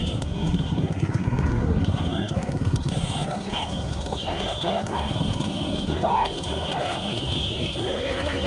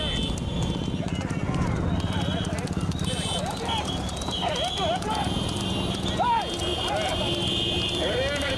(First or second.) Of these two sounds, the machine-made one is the first